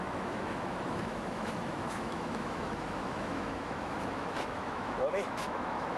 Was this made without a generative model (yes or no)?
no